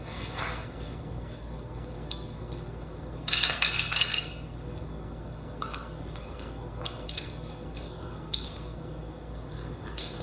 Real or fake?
fake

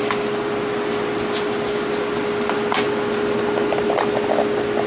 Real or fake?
real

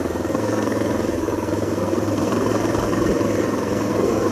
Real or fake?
fake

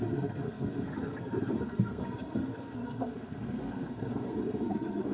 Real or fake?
fake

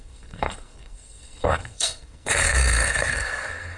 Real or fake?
fake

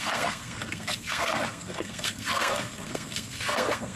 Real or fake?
fake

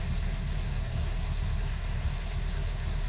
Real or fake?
fake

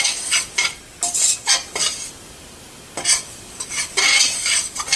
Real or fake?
real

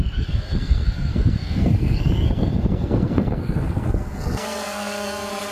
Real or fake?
fake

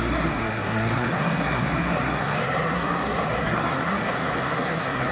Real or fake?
fake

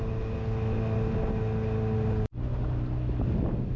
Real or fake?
real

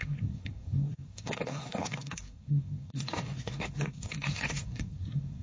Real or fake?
fake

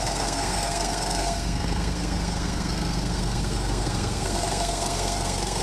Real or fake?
fake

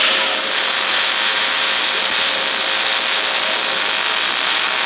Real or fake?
real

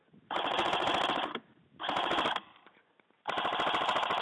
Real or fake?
real